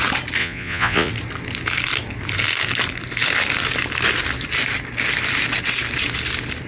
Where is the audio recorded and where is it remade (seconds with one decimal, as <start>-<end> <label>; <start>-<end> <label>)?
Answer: 0.0-0.4 recorded; 0.4-1.1 remade; 1.1-6.7 recorded